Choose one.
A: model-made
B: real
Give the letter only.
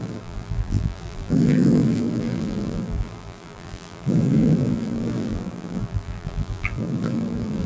A